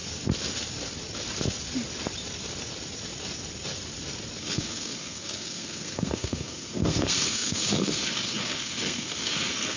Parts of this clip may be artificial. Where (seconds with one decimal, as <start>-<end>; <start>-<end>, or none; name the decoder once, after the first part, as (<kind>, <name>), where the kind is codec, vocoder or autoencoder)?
4.4-9.8 (codec, SNAC)